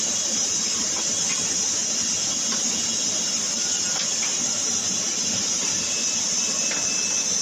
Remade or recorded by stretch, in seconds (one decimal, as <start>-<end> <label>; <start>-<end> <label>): 0.0-7.4 recorded